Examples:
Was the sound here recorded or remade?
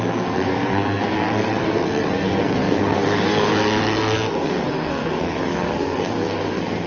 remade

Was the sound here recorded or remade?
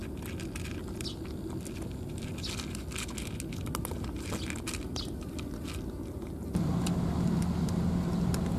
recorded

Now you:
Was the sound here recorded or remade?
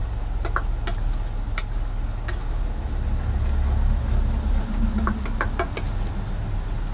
recorded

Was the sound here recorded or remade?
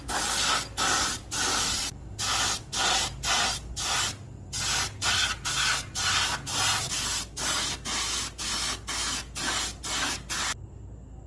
recorded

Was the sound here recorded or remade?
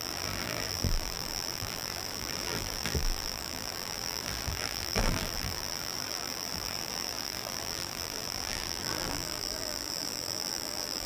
remade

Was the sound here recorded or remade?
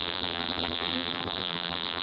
remade